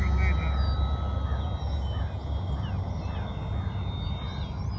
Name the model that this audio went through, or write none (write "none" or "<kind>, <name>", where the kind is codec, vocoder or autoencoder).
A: none